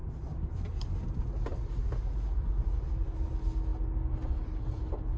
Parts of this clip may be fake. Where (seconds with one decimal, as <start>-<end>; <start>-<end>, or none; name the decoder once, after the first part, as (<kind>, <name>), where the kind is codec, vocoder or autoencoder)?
none